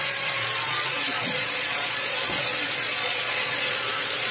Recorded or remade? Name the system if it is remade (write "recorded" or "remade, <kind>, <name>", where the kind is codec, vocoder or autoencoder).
remade, vocoder, Vocos